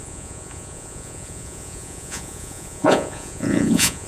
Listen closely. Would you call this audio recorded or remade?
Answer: remade